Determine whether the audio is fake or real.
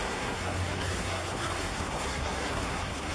fake